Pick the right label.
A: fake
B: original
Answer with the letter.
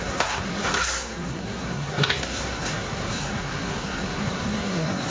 A